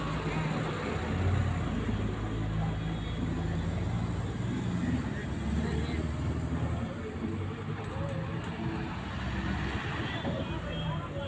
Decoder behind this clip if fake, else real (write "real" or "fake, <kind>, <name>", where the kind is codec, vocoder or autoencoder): real